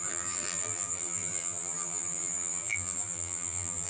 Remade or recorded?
remade